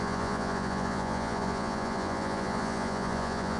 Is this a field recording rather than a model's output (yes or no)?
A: no